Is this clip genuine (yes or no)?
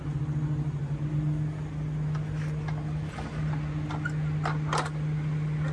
yes